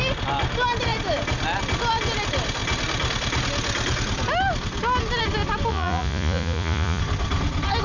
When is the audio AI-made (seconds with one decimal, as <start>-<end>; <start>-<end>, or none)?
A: 5.7-7.0

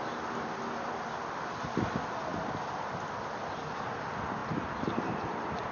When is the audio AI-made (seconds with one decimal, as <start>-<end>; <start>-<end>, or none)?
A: none

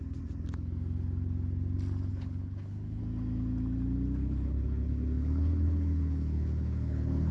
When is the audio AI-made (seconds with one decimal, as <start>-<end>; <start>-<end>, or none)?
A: 2.1-3.0; 4.2-7.3

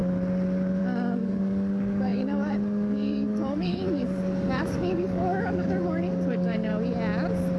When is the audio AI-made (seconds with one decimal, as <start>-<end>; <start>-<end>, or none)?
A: 0.8-6.7

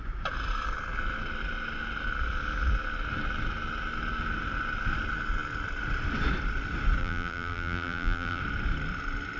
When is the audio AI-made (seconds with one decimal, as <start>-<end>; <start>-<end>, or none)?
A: 7.0-8.4

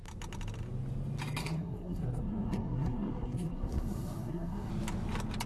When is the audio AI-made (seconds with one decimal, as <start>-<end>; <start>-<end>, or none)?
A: 1.4-4.7

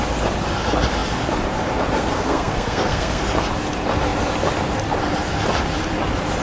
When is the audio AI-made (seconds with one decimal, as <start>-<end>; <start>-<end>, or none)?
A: 2.0-3.2